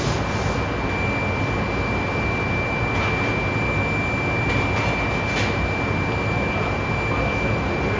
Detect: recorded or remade recorded